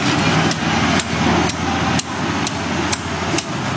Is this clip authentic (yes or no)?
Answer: yes